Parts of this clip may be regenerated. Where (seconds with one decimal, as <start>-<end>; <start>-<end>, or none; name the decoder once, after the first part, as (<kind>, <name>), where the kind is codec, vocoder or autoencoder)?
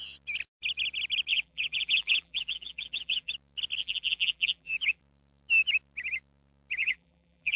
1.3-3.3 (vocoder, BigVGAN v2); 3.8-5.0; 6.8-7.6